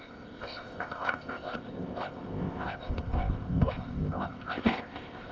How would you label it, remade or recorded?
remade